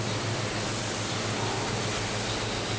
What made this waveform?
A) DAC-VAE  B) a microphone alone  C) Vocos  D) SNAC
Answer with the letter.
B